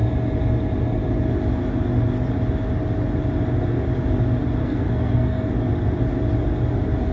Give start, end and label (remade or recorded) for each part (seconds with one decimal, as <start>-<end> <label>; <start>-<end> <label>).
0.0-4.6 recorded; 4.6-5.5 remade; 5.5-7.1 recorded